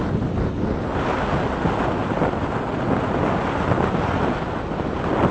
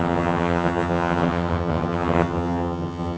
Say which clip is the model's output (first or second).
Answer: second